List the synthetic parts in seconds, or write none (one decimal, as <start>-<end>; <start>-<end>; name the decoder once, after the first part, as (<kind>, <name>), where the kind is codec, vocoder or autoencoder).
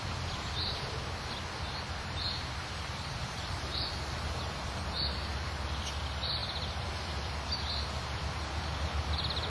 2.6-5.5 (vocoder, BigVGAN v2)